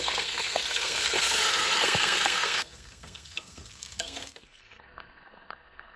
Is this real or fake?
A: fake